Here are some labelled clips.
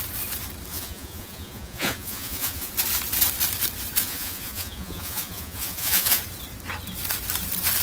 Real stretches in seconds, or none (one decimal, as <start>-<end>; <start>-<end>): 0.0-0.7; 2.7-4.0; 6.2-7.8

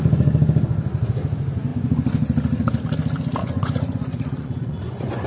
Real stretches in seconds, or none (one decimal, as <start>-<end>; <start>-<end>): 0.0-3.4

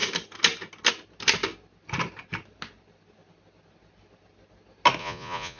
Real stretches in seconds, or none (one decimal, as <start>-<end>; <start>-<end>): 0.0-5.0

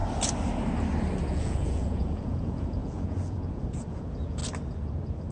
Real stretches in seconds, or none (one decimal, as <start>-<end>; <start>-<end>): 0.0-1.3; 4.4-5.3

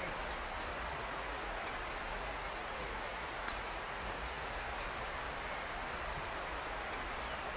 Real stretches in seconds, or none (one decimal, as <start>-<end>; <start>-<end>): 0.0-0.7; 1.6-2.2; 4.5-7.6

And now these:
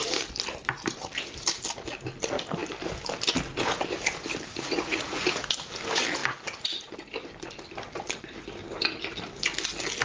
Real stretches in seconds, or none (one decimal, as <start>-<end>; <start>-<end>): 0.0-4.5; 5.5-10.0